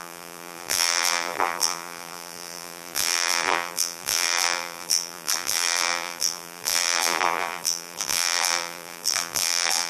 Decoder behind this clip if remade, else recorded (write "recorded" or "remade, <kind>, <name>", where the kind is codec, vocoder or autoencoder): remade, vocoder, BigVGAN v2